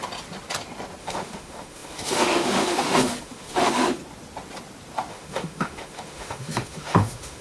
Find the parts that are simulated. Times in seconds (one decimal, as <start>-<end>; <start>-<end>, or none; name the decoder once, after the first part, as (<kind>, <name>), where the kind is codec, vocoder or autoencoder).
1.0-4.0 (autoencoder, DAC-VAE); 5.1-7.4